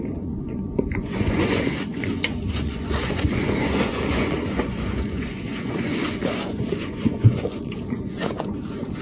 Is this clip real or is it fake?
fake